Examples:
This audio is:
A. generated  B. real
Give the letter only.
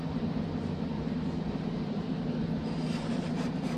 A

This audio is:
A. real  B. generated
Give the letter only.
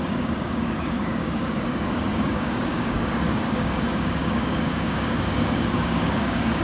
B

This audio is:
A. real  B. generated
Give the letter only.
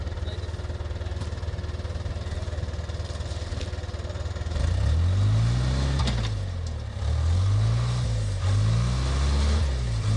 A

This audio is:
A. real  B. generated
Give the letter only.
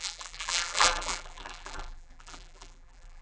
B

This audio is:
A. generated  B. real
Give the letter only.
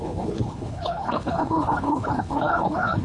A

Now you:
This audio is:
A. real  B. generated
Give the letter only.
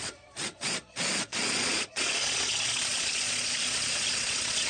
B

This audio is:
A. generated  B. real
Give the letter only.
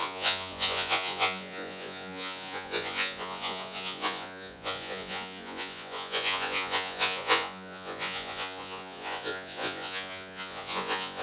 A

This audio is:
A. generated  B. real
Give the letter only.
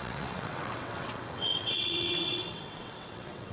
A